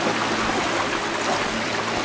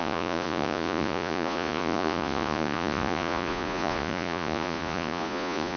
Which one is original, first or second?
first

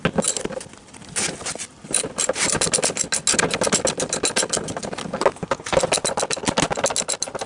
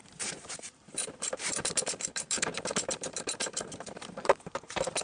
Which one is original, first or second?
first